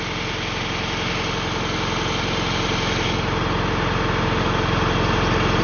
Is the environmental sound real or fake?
real